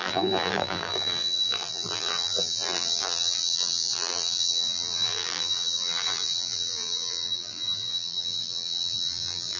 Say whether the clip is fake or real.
fake